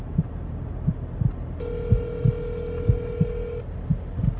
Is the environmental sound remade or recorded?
recorded